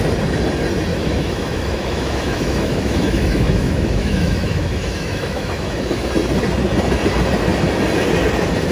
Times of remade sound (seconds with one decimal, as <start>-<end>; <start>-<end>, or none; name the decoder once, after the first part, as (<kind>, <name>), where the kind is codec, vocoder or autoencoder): 0.9-6.1 (autoencoder, DAC-VAE)